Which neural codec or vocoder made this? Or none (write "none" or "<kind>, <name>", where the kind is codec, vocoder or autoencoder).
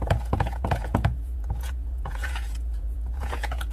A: vocoder, Vocos